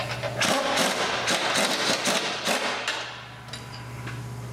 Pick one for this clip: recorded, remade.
recorded